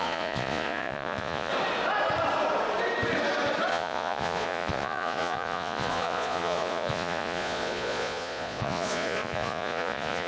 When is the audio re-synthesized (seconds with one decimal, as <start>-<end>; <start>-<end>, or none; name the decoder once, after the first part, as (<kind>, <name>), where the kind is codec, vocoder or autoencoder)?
0.0-1.5 (vocoder, Vocos); 3.7-10.3